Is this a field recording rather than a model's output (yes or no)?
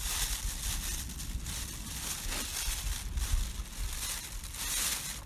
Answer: yes